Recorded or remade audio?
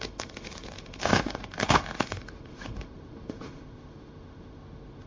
remade